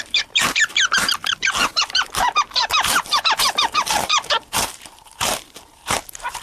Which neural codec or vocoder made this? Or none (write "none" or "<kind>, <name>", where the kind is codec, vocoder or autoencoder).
vocoder, BigVGAN v2